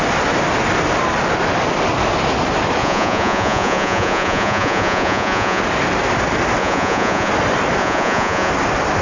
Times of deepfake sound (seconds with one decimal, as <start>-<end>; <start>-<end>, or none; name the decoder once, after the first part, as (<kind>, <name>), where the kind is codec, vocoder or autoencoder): 2.8-5.6 (vocoder, Vocos); 6.6-7.3; 7.8-8.5